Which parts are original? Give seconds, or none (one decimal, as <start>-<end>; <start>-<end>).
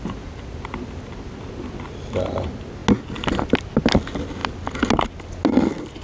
0.0-6.0